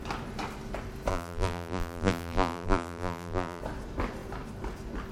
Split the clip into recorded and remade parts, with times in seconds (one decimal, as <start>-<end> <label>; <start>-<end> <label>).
0.0-1.1 recorded; 1.1-3.6 remade; 3.6-5.1 recorded